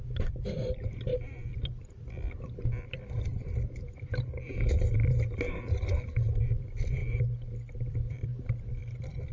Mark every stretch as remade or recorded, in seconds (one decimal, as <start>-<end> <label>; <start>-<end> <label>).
0.0-4.5 remade; 4.5-6.4 recorded; 6.4-7.0 remade; 7.0-7.9 recorded; 7.9-8.3 remade; 8.3-8.8 recorded; 8.8-9.3 remade